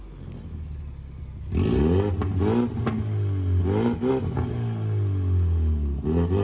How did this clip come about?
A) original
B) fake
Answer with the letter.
A